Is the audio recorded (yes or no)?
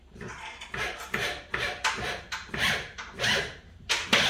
yes